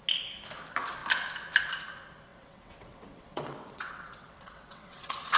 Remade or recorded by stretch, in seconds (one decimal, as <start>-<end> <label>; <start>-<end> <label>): 0.0-2.3 recorded; 2.3-5.4 remade